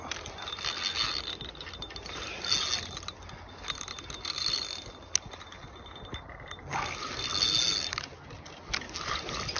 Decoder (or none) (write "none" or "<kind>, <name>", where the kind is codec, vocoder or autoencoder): none